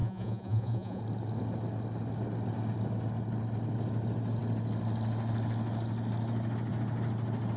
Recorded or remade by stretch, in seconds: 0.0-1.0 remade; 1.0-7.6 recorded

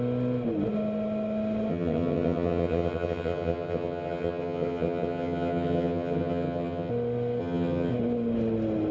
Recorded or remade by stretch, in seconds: 0.0-1.7 recorded; 1.7-6.9 remade; 6.9-7.4 recorded; 7.4-7.9 remade; 7.9-8.9 recorded

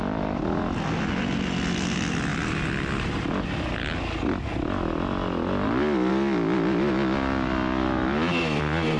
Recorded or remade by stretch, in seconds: 0.0-9.0 recorded

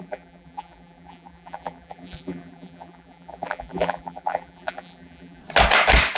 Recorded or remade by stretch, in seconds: 0.0-5.4 remade; 5.4-6.2 recorded

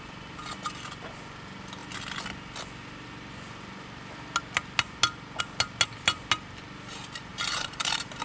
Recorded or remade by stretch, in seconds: 0.0-7.3 recorded; 7.3-8.2 remade

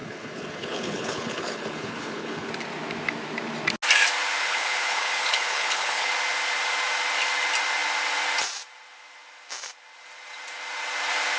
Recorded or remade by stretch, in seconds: 0.0-2.5 remade; 2.5-4.4 recorded; 4.4-6.1 remade; 6.1-11.4 recorded

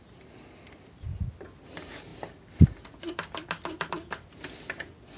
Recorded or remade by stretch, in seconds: 0.0-5.2 recorded